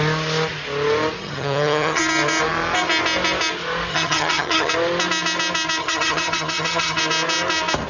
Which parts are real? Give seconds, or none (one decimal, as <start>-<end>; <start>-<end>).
0.0-1.2; 2.0-3.9; 4.7-5.8; 7.0-7.9